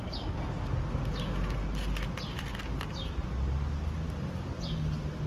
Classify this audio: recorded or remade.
recorded